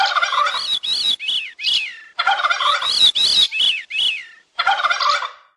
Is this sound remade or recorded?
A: remade